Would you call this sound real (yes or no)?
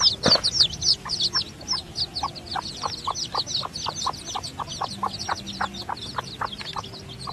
yes